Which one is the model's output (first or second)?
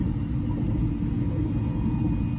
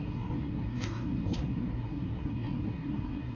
second